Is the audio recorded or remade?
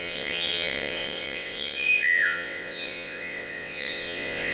remade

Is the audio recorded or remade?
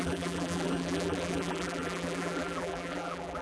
remade